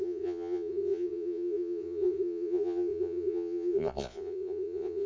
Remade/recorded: remade